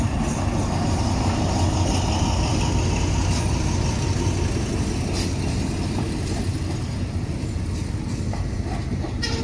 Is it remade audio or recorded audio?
recorded